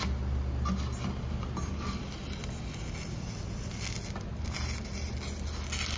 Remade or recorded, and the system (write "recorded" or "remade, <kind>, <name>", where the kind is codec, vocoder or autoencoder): recorded